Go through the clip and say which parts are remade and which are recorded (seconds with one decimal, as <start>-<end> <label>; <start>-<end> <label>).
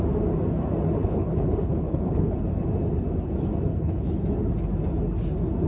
0.0-1.0 recorded; 1.0-2.4 remade; 2.4-3.7 recorded; 3.7-4.2 remade; 4.2-5.7 recorded